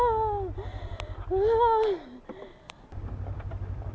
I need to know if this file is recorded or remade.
recorded